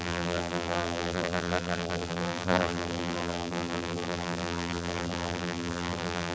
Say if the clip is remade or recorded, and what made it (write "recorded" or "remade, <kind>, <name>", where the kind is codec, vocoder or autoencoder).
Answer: remade, vocoder, BigVGAN v2